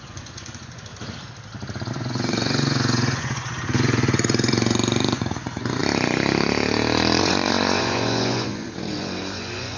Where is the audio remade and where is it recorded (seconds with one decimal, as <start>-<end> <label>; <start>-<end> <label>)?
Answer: 0.0-0.9 remade; 0.9-1.9 recorded; 1.9-5.8 remade; 5.8-7.2 recorded; 7.2-9.8 remade